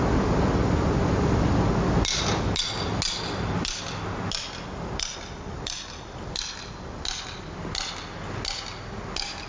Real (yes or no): yes